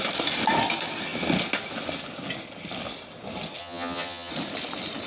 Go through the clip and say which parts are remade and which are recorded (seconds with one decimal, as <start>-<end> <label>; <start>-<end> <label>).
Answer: 0.0-3.6 recorded; 3.6-4.3 remade; 4.3-5.1 recorded